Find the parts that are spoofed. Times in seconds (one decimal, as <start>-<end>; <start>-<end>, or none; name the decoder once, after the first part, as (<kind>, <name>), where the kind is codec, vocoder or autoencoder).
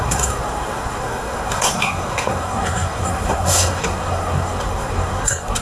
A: 0.0-5.6 (codec, SNAC)